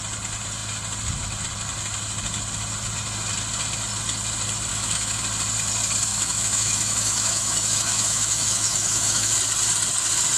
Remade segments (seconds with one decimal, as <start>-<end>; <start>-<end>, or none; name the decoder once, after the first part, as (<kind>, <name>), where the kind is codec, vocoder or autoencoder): 4.7-5.2 (autoencoder, DAC-VAE); 6.1-9.3

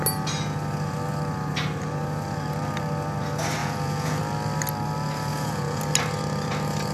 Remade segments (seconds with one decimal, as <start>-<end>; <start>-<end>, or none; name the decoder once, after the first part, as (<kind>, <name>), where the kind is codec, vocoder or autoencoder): 3.6-4.2 (vocoder, Vocos); 5.3-5.8

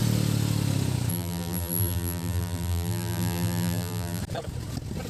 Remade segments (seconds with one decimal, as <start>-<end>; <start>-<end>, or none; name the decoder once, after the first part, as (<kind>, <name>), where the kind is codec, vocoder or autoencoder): 1.1-4.2 (vocoder, BigVGAN v2)